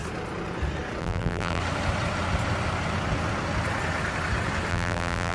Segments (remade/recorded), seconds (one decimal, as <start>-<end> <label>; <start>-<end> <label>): 0.0-1.0 recorded; 1.0-1.6 remade; 1.6-4.7 recorded; 4.7-5.3 remade